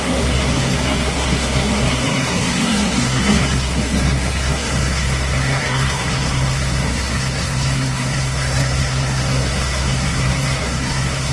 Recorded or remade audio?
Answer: remade